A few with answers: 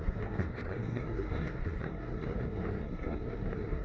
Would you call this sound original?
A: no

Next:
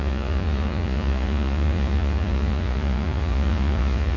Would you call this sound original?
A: no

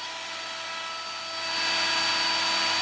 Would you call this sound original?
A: yes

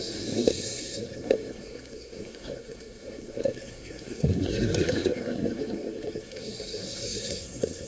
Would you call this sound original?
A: no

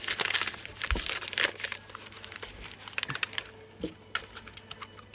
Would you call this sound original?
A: yes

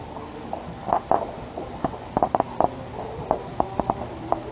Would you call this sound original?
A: yes